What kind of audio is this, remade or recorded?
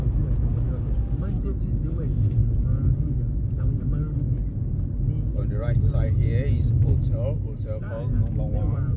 recorded